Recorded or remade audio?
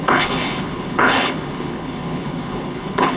remade